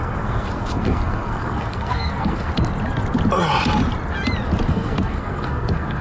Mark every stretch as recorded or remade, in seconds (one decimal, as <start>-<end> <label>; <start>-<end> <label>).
0.0-2.5 remade; 2.5-4.7 recorded; 4.7-6.0 remade